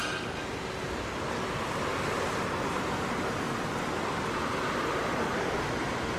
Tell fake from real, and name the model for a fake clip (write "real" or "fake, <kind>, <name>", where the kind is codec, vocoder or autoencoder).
real